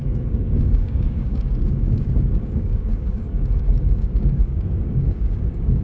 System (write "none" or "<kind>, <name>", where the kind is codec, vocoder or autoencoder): codec, DAC